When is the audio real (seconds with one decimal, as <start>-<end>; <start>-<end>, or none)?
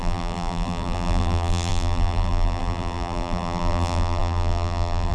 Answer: none